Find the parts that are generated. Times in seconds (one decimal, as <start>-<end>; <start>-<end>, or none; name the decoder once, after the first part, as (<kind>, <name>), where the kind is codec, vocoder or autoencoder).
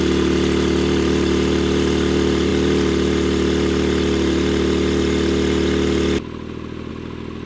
none